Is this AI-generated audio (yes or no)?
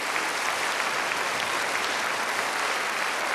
no